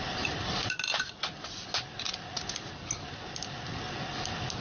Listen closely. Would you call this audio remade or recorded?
recorded